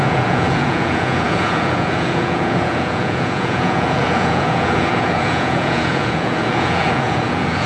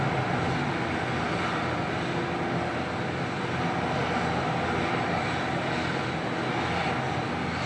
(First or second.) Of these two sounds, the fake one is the first